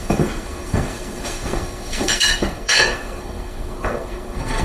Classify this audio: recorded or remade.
remade